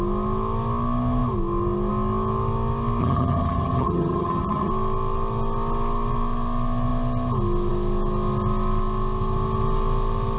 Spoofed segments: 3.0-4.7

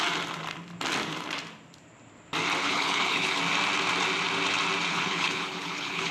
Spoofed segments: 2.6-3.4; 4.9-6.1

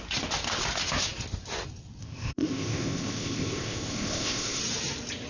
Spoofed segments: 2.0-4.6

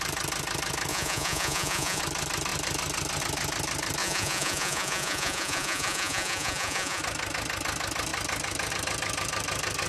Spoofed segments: 0.9-2.0; 4.0-7.0

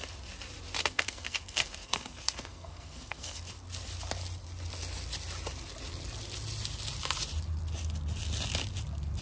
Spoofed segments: 0.8-3.4

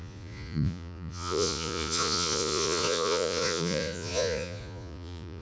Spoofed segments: 0.0-5.4

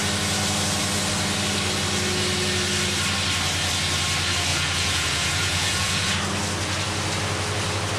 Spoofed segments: 4.5-6.1